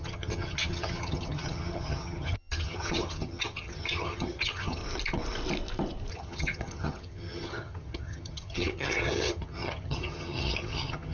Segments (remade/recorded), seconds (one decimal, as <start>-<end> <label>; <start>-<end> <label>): 0.0-4.8 remade; 4.8-6.1 recorded; 6.1-11.1 remade